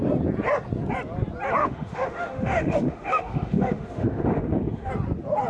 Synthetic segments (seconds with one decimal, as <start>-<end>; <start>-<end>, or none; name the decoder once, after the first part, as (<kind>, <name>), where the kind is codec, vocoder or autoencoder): 1.6-4.9 (autoencoder, DAC-VAE)